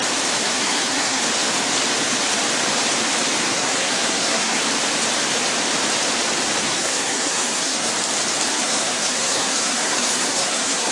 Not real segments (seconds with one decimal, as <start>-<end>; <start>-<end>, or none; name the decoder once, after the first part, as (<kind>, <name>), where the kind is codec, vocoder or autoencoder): 0.4-1.2 (codec, SNAC); 3.4-4.6; 6.6-7.9; 8.5-10.9